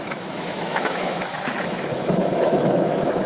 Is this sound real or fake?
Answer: fake